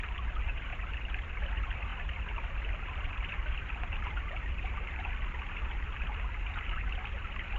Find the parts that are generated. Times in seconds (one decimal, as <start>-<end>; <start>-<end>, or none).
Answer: 0.7-1.4; 1.9-6.2